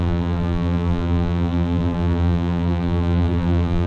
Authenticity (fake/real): fake